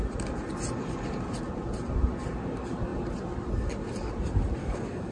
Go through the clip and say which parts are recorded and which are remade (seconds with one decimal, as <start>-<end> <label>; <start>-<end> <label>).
0.0-4.6 recorded; 4.6-5.1 remade